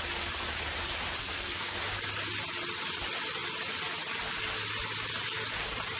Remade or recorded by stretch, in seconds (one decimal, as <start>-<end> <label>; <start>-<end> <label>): 0.0-1.2 recorded; 1.2-1.8 remade; 1.8-6.0 recorded